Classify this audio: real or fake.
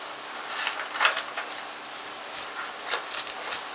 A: real